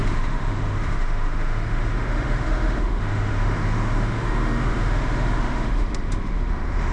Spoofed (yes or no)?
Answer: yes